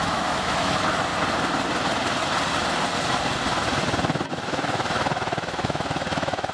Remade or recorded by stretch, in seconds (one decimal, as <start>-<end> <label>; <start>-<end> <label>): 0.0-1.1 remade; 1.1-4.3 recorded; 4.3-6.5 remade